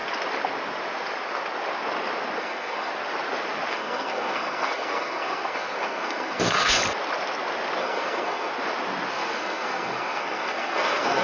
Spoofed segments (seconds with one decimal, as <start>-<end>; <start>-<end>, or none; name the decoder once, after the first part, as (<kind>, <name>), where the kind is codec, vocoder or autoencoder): 2.4-2.9 (codec, SNAC); 3.7-6.8; 7.8-8.5; 9.1-11.2